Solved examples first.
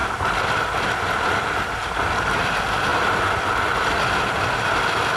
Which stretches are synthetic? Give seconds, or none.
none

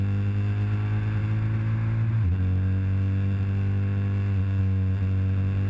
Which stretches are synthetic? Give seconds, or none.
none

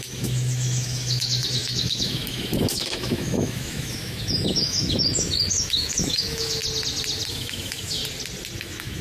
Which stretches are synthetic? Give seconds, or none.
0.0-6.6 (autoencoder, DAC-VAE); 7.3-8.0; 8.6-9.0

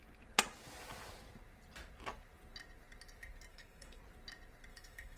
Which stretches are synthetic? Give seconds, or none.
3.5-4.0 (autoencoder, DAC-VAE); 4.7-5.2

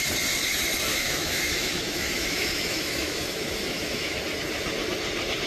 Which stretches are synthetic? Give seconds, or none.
0.9-4.2 (autoencoder, DAC-VAE)

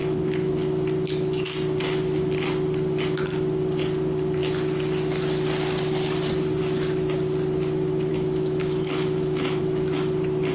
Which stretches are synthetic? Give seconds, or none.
0.0-0.5 (autoencoder, DAC-VAE); 8.1-9.6

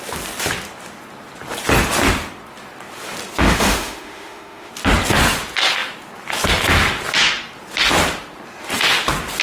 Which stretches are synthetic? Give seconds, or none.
3.4-4.7 (autoencoder, DAC-VAE)